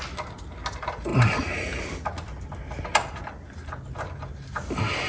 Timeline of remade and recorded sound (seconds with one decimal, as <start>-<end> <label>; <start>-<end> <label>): 0.0-5.1 recorded

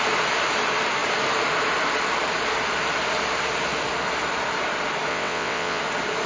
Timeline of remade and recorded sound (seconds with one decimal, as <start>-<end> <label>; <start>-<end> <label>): 0.0-5.1 recorded; 5.1-5.8 remade; 5.8-6.3 recorded

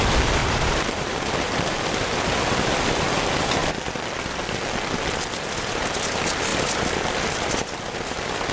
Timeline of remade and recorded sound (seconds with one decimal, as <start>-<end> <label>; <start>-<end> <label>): 0.0-0.4 recorded; 0.4-1.3 remade; 1.3-8.5 recorded

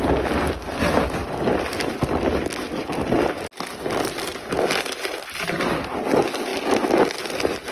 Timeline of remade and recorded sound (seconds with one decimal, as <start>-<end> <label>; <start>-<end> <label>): 0.0-7.7 recorded

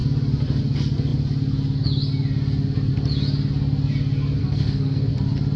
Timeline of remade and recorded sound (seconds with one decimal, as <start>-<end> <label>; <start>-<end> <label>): 0.0-4.4 recorded; 4.4-5.1 remade; 5.1-5.6 recorded

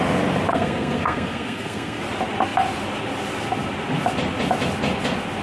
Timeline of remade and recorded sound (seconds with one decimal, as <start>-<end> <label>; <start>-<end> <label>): 0.0-0.5 recorded; 0.5-2.0 remade; 2.0-5.4 recorded

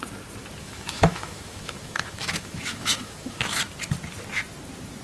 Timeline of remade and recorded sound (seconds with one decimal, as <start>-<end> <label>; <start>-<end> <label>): 0.0-0.6 recorded; 0.6-3.6 remade; 3.6-5.0 recorded